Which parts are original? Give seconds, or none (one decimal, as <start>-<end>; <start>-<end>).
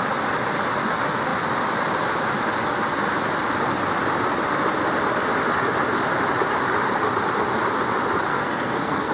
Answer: 0.0-8.3